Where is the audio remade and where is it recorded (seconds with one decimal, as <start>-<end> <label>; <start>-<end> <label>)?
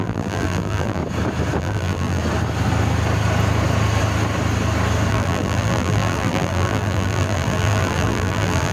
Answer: 0.0-1.0 remade; 1.0-1.6 recorded; 1.6-2.2 remade; 2.2-5.1 recorded; 5.1-8.7 remade